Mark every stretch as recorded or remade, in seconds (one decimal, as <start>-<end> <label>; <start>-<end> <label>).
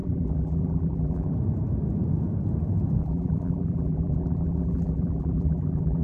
0.0-1.3 remade; 1.3-3.0 recorded; 3.0-6.0 remade